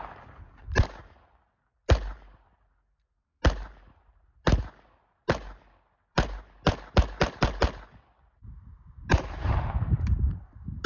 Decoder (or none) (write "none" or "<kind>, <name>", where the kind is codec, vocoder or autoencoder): none